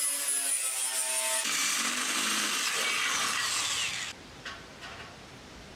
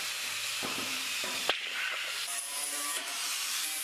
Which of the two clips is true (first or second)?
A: first